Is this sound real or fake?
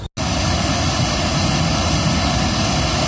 real